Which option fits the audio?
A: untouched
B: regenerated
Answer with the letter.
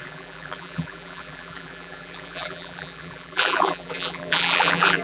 B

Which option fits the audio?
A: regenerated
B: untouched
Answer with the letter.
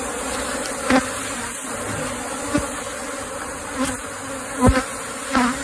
B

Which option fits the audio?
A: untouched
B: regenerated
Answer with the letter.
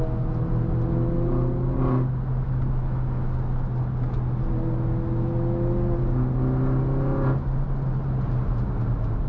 A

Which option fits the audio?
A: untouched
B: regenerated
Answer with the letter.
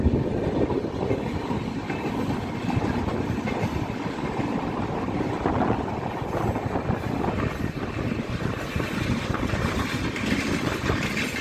B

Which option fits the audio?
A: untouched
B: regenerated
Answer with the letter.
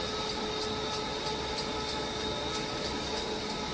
A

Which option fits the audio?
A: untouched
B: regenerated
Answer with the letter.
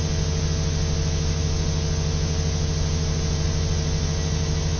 A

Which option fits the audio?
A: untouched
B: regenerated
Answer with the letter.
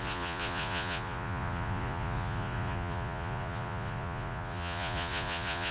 B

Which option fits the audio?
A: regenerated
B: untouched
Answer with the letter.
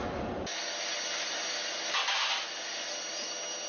B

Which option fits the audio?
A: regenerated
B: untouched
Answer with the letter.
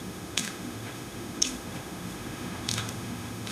A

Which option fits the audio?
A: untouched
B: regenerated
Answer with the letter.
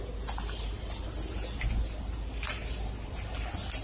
A